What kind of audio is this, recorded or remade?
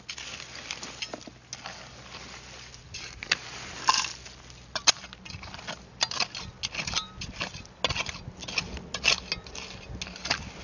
recorded